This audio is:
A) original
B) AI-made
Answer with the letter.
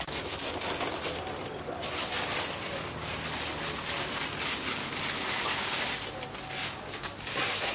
A